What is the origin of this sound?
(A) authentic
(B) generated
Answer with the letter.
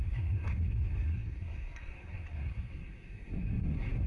B